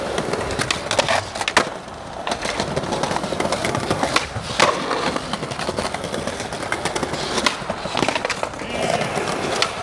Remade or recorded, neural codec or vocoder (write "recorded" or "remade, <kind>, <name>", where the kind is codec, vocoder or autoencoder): recorded